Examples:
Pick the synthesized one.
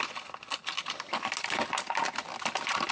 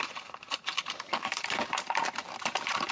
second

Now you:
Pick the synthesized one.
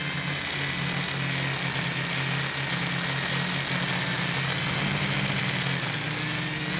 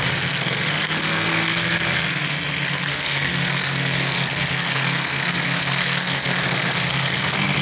second